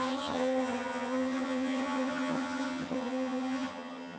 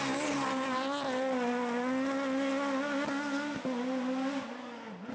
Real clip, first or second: second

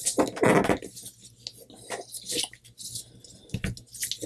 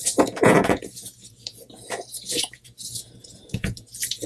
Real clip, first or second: first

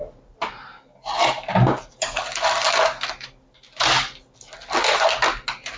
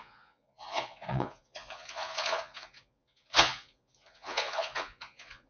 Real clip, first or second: first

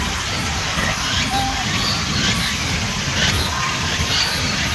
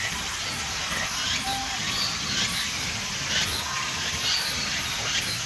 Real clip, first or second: second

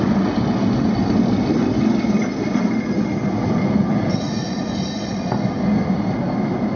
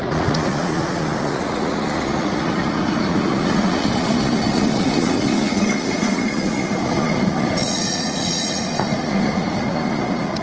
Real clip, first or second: first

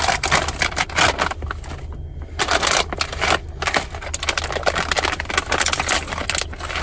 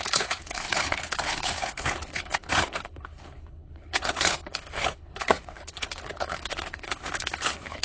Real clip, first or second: first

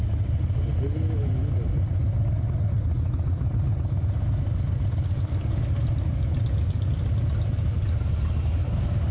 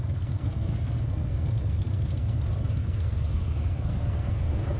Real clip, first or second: first